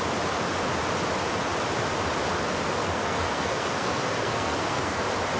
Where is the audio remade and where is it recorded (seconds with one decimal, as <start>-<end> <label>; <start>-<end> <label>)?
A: 0.0-2.8 recorded; 2.8-5.0 remade; 5.0-5.4 recorded